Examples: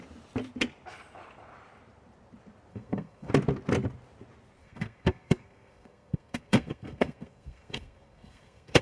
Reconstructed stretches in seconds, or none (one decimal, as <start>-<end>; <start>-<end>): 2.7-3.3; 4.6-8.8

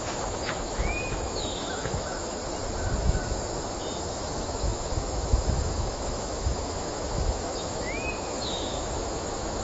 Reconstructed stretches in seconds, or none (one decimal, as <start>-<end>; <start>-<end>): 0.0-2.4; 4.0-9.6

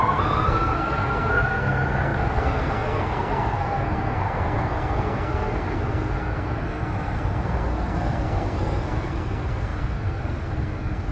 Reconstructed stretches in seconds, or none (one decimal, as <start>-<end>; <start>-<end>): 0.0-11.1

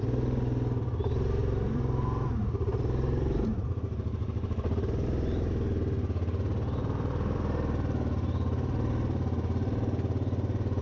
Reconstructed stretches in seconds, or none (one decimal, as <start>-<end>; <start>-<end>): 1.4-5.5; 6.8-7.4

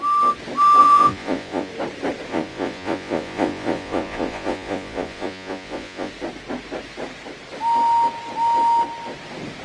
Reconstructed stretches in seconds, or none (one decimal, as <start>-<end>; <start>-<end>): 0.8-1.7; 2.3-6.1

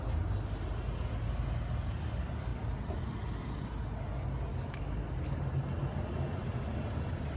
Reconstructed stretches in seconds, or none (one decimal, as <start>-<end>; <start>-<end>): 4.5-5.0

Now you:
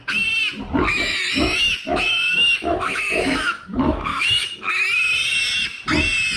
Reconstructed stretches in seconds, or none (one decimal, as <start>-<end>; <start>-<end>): 0.9-4.7